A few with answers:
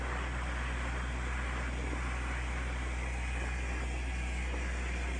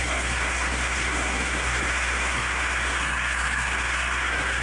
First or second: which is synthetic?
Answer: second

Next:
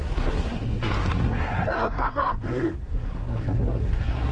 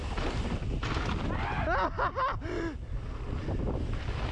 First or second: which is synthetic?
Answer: first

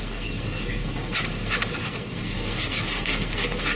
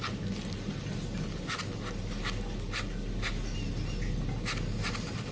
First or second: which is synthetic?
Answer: first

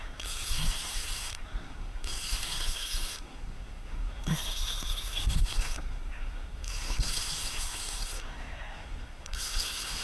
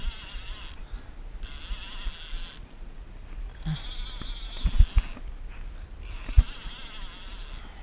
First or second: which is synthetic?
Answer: first